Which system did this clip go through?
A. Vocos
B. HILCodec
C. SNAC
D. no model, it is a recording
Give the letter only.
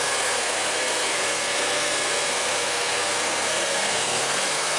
C